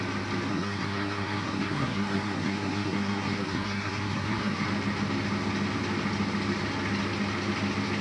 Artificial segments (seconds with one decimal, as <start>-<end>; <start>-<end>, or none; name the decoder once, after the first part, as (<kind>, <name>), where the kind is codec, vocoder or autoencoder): 0.5-4.7 (codec, SNAC)